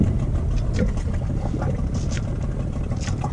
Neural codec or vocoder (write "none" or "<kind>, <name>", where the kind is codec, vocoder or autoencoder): none